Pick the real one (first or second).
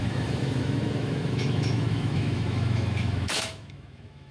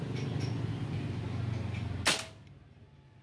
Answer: second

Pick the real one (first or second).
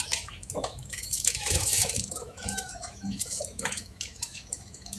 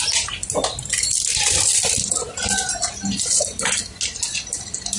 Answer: second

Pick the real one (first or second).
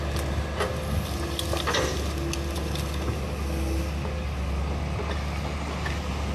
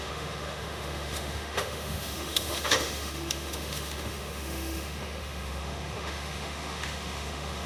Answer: first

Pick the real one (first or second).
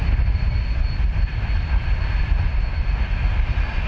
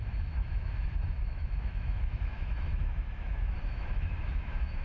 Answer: first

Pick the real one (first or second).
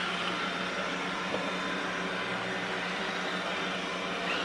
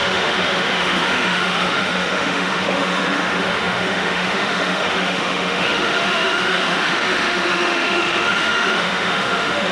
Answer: first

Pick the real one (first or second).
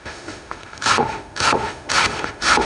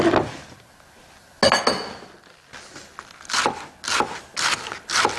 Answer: second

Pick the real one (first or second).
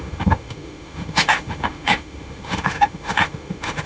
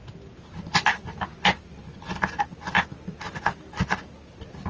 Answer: second